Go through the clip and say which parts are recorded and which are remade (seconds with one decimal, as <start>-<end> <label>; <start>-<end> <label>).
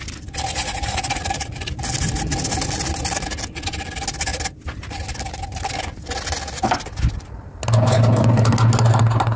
0.0-0.6 recorded; 0.6-1.7 remade; 1.7-9.4 recorded